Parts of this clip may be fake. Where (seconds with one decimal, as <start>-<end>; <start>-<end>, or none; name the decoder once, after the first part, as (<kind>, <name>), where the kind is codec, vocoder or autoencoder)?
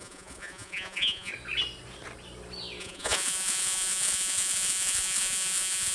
0.0-1.3 (vocoder, Vocos); 2.8-5.9